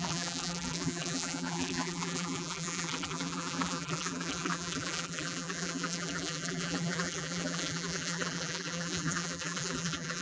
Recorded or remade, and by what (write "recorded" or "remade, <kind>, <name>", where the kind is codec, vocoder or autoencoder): remade, vocoder, BigVGAN v2